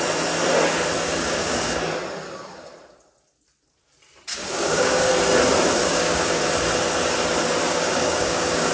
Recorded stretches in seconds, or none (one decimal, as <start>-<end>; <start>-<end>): 0.0-1.0; 1.7-4.3; 5.1-5.8; 6.4-7.7